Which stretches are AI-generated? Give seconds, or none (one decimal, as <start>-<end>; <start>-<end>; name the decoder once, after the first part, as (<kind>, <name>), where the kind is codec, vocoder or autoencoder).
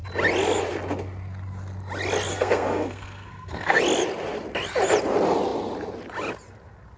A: 2.3-3.8 (codec, SNAC)